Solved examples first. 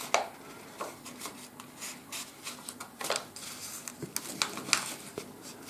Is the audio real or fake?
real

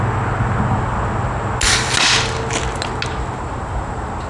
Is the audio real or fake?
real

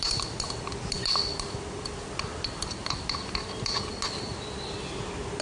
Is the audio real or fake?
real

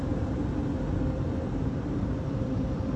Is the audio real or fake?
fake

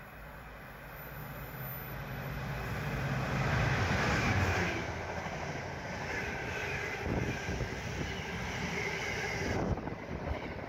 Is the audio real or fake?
real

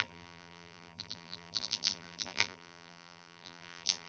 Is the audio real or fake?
fake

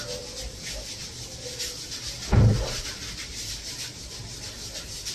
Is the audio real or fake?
real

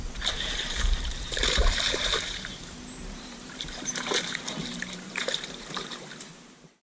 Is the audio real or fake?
fake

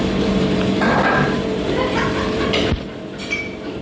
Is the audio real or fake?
fake